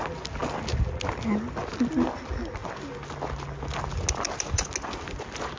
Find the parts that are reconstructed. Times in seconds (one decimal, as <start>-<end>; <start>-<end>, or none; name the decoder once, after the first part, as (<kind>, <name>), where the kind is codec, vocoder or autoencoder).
none